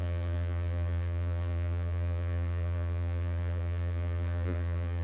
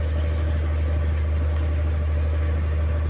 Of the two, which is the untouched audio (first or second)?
second